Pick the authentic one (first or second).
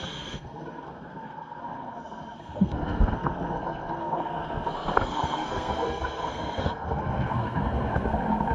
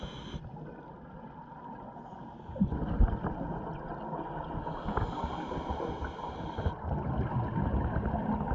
second